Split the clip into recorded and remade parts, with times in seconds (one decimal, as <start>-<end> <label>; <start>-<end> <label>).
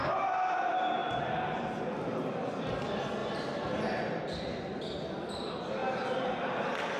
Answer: 0.0-3.2 recorded; 3.2-3.8 remade; 3.8-7.0 recorded